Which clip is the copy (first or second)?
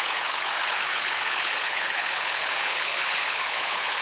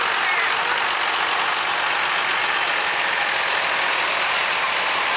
first